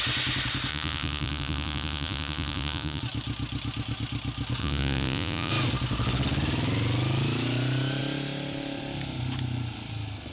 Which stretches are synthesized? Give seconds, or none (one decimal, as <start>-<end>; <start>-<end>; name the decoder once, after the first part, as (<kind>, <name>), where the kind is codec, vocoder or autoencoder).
0.7-3.0 (vocoder, Vocos); 4.6-5.5